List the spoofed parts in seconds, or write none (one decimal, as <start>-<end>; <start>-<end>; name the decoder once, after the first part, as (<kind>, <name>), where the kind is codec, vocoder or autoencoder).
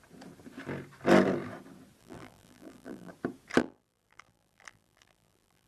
2.0-3.1 (vocoder, BigVGAN v2); 3.6-5.7